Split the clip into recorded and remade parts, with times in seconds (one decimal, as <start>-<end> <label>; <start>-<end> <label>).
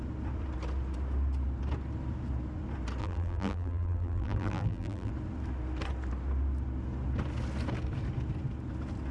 0.0-3.0 recorded; 3.0-5.1 remade; 5.1-9.1 recorded